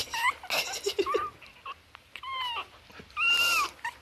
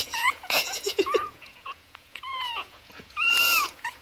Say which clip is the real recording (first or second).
first